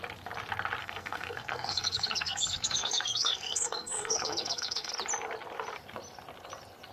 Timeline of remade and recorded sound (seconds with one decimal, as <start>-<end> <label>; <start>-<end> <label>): 0.0-0.8 recorded; 0.8-4.9 remade; 4.9-6.9 recorded